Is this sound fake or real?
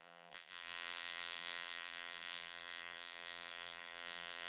fake